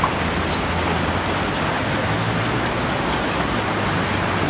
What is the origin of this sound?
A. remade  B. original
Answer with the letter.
B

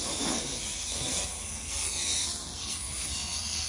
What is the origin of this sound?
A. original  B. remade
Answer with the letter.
B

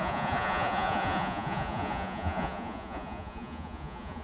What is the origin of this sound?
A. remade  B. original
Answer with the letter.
A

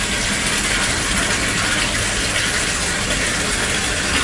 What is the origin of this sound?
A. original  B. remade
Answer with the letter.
A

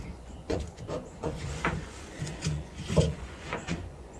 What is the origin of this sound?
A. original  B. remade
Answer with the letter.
B